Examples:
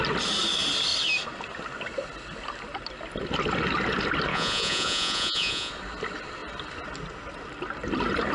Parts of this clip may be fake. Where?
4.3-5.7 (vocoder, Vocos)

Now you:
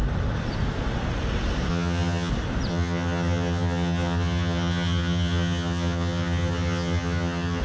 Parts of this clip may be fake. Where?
1.7-2.3 (vocoder, HiFi-GAN); 2.7-7.6